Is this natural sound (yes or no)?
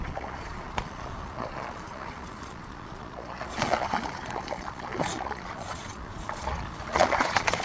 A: no